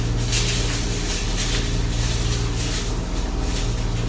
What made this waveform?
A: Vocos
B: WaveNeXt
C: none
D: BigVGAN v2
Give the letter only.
C